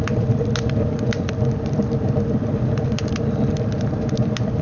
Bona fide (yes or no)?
no